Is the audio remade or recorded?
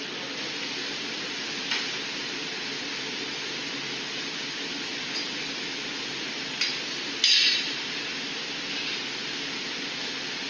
recorded